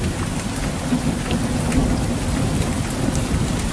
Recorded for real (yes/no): yes